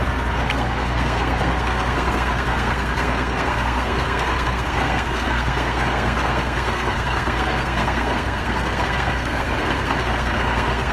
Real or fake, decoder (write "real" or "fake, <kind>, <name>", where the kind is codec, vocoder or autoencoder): fake, codec, SNAC